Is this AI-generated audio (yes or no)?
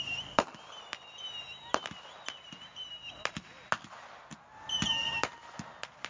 no